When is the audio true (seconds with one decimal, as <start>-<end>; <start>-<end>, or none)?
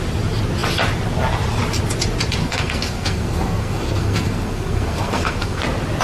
0.0-2.4; 5.6-6.0